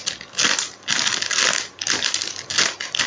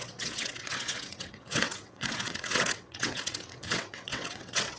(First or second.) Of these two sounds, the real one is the first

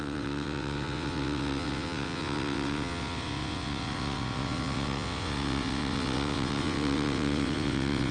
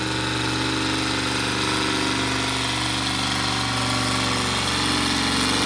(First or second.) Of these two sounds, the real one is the second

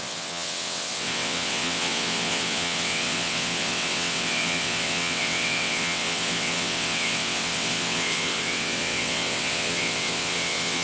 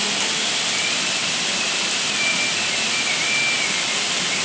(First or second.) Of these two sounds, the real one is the second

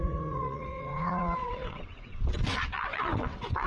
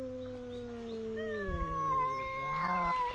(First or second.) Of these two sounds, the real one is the second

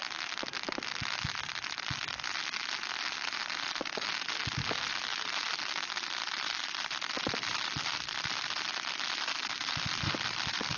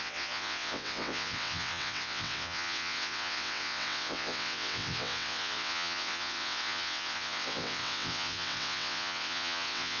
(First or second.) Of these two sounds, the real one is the first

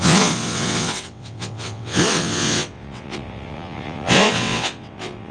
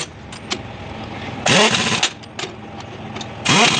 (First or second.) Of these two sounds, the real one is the second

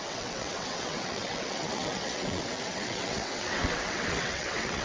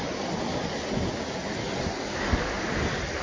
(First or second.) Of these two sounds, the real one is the second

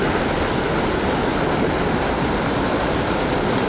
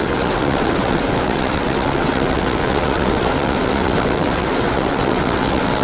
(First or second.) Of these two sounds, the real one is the first